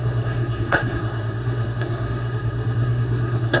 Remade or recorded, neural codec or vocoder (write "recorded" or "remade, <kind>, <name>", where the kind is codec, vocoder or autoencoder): remade, codec, SNAC